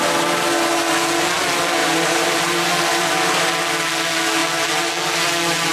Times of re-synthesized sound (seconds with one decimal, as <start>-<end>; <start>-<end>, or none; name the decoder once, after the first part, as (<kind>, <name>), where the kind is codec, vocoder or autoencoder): 1.8-3.5 (vocoder, BigVGAN v2)